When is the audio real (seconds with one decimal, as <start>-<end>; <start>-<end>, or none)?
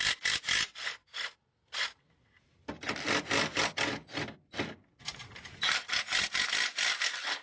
0.0-7.4